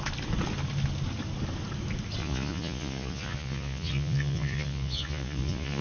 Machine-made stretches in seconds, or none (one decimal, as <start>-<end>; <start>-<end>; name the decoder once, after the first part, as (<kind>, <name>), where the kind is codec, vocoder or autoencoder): 2.2-5.8 (vocoder, Vocos)